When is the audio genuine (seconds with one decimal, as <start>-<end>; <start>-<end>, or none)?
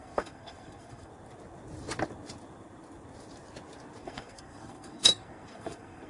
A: 1.1-4.0